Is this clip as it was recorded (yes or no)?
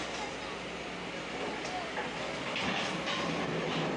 yes